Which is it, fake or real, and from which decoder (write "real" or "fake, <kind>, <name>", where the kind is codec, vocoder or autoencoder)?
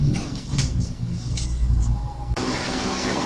fake, codec, SNAC